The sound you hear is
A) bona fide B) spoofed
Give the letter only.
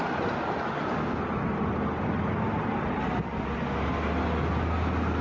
A